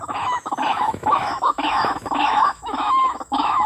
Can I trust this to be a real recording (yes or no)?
no